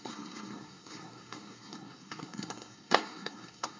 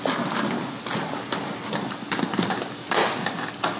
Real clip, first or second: second